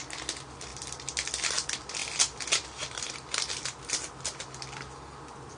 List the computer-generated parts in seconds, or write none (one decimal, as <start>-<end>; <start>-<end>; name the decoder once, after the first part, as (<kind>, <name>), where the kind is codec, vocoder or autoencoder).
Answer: none